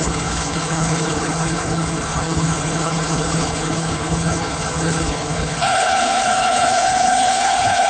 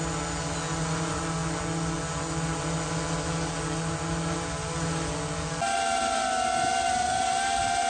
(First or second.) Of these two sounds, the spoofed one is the first